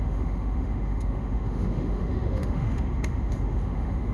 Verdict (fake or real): fake